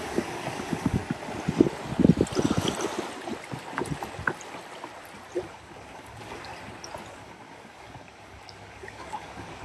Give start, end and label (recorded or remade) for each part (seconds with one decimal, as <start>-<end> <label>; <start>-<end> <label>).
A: 0.0-1.0 remade; 1.0-5.5 recorded; 5.5-6.5 remade; 6.5-7.1 recorded; 7.1-9.6 remade